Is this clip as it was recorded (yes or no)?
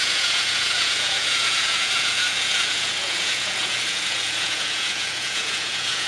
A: no